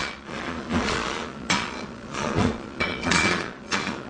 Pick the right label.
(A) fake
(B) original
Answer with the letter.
A